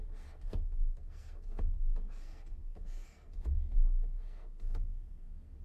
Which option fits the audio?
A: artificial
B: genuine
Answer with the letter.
A